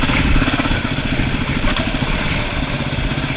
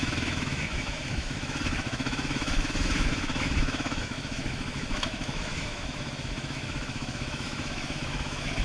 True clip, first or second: first